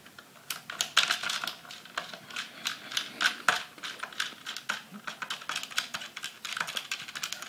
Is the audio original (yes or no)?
yes